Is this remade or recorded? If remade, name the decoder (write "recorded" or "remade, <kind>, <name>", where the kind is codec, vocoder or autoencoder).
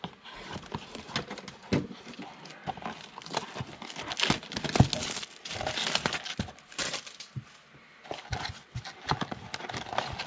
recorded